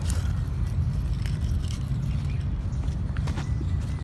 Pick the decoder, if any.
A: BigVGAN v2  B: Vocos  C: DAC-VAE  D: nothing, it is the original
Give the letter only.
D